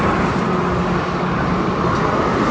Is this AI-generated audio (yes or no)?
no